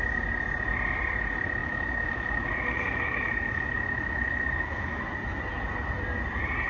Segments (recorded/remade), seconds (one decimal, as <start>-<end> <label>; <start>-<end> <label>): 0.0-1.6 recorded; 1.6-5.0 remade; 5.0-6.7 recorded